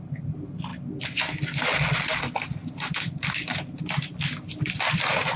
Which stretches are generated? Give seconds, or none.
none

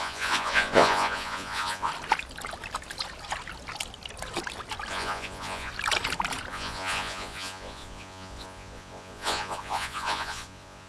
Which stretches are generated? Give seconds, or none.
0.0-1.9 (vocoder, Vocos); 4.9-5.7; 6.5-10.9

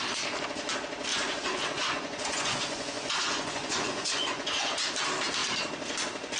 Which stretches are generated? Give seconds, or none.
1.1-4.9 (vocoder, Vocos)

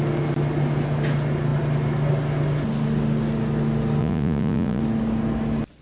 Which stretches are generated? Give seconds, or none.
4.0-4.8 (vocoder, Vocos)